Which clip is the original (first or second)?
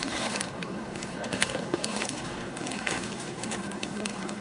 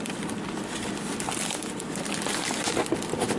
second